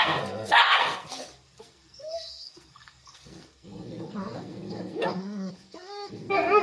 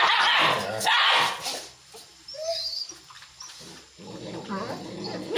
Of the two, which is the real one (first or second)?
second